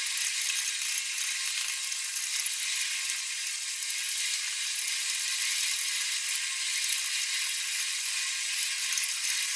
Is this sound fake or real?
real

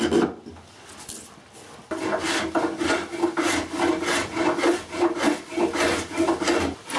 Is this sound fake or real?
real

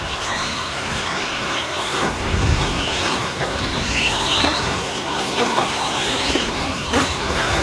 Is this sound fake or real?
fake